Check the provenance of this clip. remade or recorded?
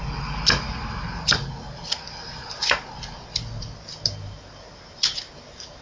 recorded